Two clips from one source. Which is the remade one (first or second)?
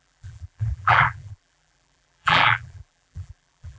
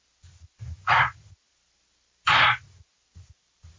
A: first